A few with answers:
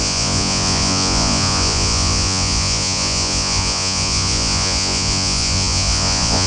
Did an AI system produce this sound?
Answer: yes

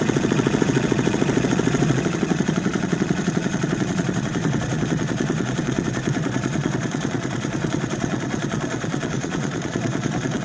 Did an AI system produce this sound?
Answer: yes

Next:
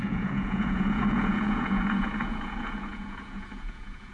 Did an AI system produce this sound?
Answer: yes